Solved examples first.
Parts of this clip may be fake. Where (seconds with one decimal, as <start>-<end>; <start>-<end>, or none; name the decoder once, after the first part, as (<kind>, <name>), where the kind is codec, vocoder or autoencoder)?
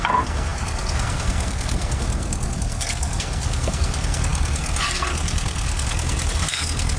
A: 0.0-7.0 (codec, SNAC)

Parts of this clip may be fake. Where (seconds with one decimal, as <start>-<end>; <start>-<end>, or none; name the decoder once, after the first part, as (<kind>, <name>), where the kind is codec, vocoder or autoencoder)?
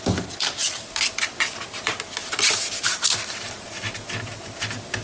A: none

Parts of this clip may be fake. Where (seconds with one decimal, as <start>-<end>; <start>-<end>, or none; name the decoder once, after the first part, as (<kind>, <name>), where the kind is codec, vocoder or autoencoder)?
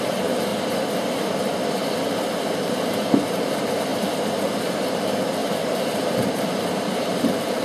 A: 0.0-0.5 (vocoder, BigVGAN v2); 2.0-7.6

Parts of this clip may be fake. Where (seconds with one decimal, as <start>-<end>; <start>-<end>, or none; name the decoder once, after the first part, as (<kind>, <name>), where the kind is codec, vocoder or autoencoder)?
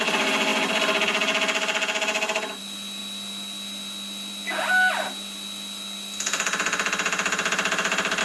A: none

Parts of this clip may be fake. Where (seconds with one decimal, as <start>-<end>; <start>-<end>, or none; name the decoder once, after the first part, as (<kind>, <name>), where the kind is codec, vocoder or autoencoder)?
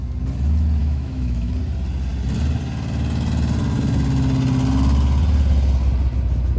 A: 0.8-1.5 (autoencoder, DAC-VAE)